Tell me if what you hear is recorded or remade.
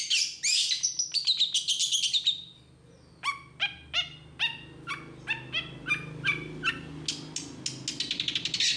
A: recorded